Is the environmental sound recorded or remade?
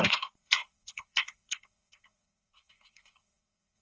remade